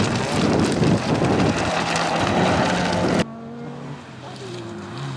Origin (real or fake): real